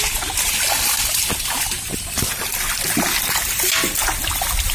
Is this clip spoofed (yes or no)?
no